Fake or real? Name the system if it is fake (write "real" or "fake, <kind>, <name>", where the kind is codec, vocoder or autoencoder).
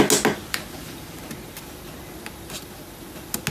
real